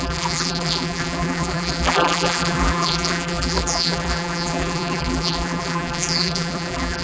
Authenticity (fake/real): fake